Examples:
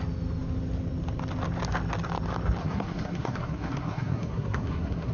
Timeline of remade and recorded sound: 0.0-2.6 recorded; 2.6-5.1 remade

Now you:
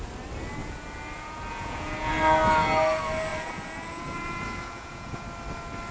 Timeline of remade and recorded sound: 0.0-0.6 recorded; 0.6-2.1 remade; 2.1-3.3 recorded; 3.3-5.2 remade; 5.2-5.9 recorded

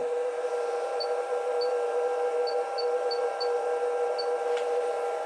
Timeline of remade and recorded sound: 0.0-5.3 recorded